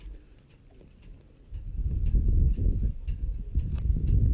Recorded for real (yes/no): yes